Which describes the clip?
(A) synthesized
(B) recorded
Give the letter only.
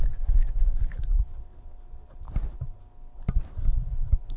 B